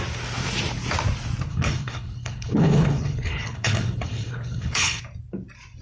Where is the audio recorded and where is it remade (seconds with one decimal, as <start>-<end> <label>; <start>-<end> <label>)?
0.0-1.5 recorded; 1.5-5.0 remade; 5.0-5.8 recorded